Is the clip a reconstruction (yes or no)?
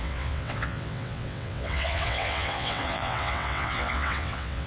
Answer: yes